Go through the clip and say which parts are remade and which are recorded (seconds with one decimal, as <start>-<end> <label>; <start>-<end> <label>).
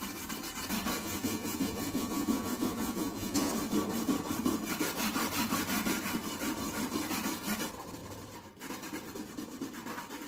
0.0-1.0 recorded; 1.0-3.5 remade; 3.5-10.3 recorded